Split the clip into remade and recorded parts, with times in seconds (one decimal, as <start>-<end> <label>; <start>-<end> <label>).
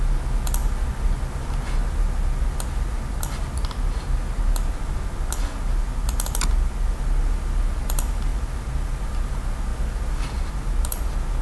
0.0-11.4 recorded